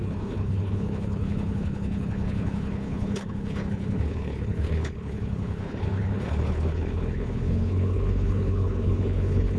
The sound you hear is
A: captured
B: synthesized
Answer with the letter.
B